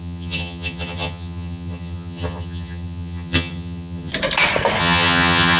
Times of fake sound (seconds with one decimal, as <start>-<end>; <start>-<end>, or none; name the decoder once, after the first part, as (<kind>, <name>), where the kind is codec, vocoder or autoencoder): 0.0-4.1 (vocoder, HiFi-GAN); 4.8-5.6